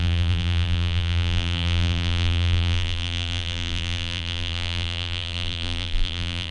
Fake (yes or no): yes